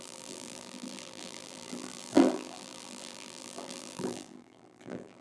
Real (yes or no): no